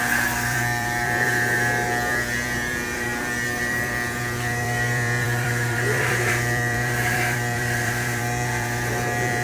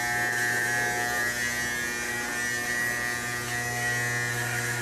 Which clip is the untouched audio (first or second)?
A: second